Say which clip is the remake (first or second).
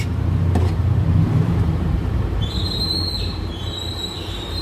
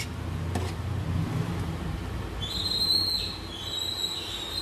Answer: first